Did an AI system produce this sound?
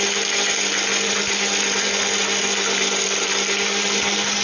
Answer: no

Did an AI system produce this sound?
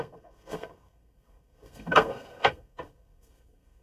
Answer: yes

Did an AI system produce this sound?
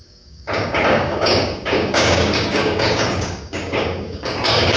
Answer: yes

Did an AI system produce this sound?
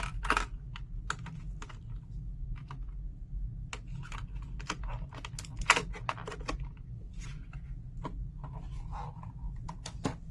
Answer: no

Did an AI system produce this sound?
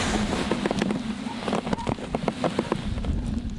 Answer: no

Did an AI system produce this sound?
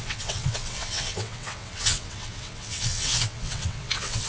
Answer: yes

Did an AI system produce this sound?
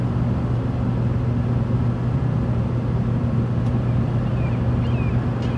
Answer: no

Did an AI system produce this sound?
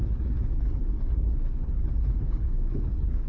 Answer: yes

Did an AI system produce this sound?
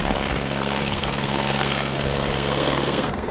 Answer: yes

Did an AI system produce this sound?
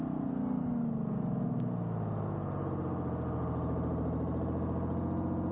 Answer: no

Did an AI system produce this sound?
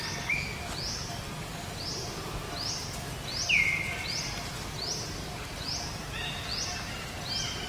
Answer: no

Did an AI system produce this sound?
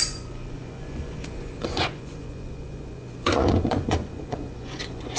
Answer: yes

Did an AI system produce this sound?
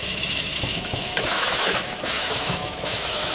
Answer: yes